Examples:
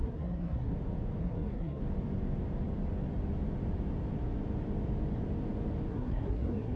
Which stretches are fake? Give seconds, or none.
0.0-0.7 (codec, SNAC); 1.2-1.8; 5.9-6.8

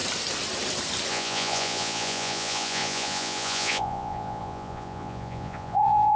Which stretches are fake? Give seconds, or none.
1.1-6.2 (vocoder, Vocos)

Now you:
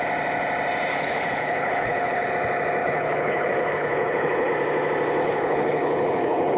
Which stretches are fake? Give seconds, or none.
0.9-2.3 (codec, HILCodec); 2.8-4.5; 5.2-6.6